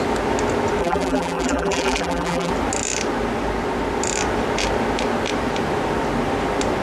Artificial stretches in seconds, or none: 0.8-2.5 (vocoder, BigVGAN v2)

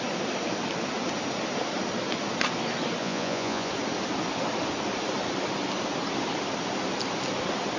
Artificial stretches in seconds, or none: 3.0-3.7 (vocoder, Vocos)